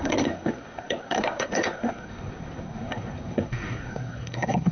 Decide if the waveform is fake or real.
fake